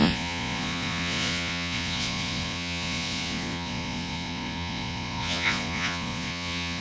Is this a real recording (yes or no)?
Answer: no